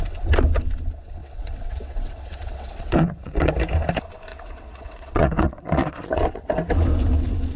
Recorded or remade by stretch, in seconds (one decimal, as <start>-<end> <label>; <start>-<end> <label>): 0.0-1.2 recorded; 1.2-3.5 remade; 3.5-4.3 recorded; 4.3-6.4 remade; 6.4-7.6 recorded